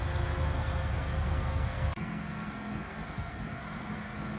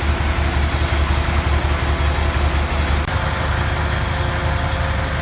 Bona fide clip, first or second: second